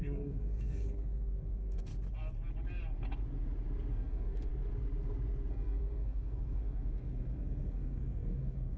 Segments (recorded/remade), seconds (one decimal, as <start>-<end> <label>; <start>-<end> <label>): 0.0-1.9 remade; 1.9-3.9 recorded; 3.9-4.5 remade; 4.5-5.5 recorded; 5.5-8.8 remade